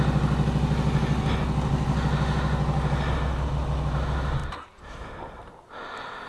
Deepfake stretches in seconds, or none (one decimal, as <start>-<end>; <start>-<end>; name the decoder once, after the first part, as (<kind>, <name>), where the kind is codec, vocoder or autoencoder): 4.4-5.1 (vocoder, BigVGAN v2)